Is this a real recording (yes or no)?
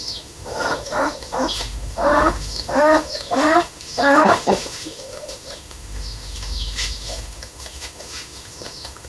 no